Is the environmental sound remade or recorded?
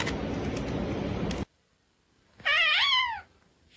recorded